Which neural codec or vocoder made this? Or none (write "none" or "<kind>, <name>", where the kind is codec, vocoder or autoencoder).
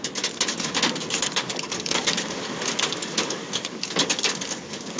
codec, DAC